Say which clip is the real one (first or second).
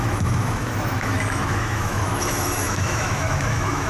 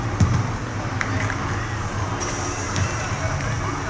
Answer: second